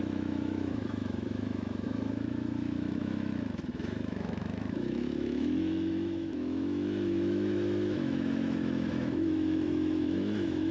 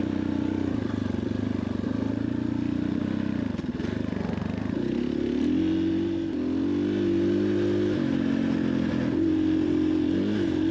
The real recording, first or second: second